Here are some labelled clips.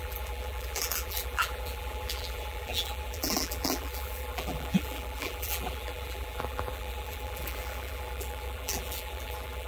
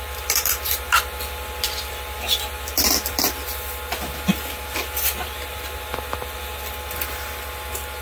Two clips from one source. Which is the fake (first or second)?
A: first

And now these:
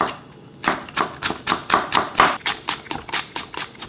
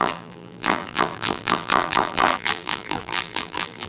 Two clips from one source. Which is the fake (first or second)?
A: second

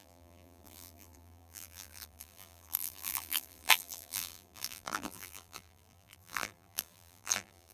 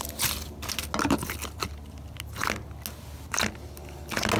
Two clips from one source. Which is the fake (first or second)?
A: first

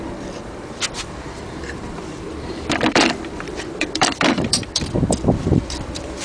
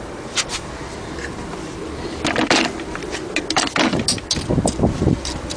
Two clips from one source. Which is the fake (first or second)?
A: first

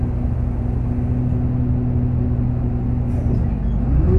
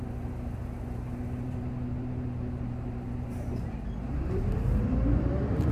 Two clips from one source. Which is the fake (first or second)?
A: second